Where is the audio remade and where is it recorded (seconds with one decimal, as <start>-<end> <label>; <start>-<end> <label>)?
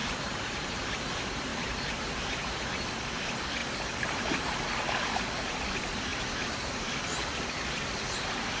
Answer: 0.0-1.1 remade; 1.1-1.5 recorded; 1.5-2.9 remade; 2.9-6.1 recorded; 6.1-6.8 remade; 6.8-8.6 recorded